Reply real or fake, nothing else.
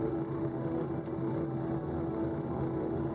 fake